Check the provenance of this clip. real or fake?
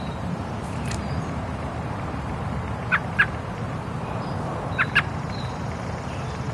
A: fake